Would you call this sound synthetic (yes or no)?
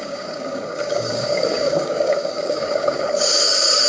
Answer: yes